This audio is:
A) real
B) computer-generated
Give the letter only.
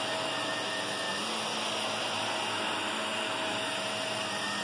A